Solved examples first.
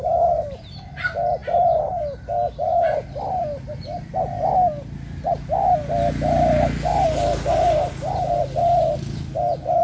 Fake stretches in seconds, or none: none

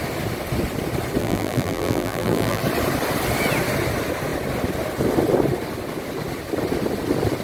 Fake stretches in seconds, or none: 1.2-2.6 (vocoder, BigVGAN v2)

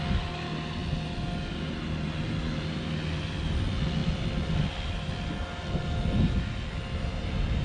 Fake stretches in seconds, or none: none

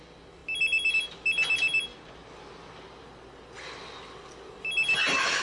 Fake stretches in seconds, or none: none

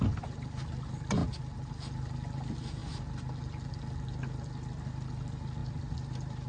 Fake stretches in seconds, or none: 5.6-6.5 (vocoder, BigVGAN v2)

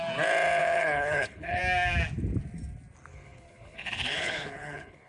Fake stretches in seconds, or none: 0.6-1.6 (codec, HILCodec); 3.1-5.1